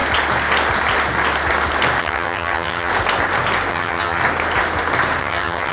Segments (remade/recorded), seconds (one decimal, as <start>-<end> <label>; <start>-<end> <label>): 0.0-2.0 recorded; 2.0-2.9 remade; 2.9-3.7 recorded; 3.7-4.2 remade; 4.2-5.2 recorded; 5.2-5.7 remade